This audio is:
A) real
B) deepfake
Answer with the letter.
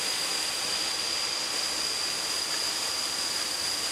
A